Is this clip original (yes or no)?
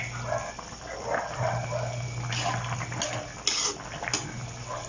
yes